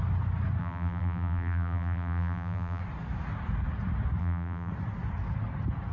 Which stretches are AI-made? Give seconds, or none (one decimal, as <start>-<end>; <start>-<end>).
0.6-2.8; 4.2-4.7